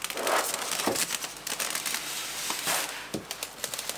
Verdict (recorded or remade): recorded